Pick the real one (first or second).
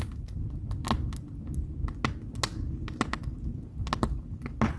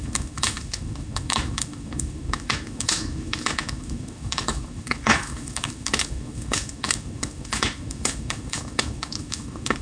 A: first